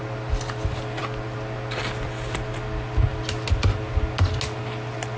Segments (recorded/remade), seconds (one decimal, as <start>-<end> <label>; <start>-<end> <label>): 0.0-5.2 recorded